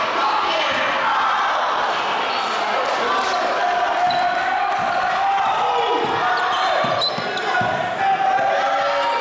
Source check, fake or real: real